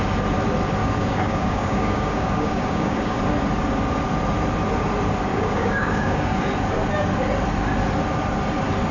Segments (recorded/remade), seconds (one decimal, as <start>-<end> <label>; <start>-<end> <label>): 0.0-0.8 recorded; 0.8-3.2 remade; 3.2-5.3 recorded; 5.3-6.4 remade; 6.4-8.9 recorded